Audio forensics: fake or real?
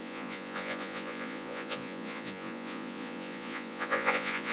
fake